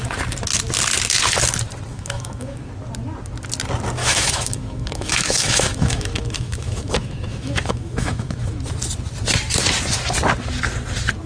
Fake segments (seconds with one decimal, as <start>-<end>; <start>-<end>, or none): 1.9-2.6; 4.0-8.5